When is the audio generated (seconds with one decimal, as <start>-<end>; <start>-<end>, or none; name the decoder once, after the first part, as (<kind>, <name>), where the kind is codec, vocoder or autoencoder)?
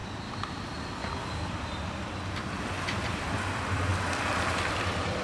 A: 0.0-3.9 (vocoder, BigVGAN v2); 4.7-5.2